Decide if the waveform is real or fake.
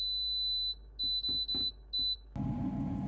real